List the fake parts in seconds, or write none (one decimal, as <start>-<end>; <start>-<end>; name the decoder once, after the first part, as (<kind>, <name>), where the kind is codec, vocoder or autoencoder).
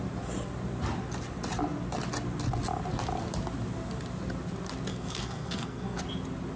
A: 4.9-6.0 (codec, SNAC)